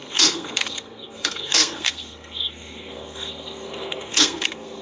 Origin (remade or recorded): remade